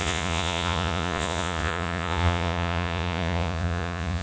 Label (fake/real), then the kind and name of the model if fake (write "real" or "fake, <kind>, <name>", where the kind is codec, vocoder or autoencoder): fake, vocoder, Vocos